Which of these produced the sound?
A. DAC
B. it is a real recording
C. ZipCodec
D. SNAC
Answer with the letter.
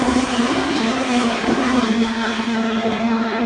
D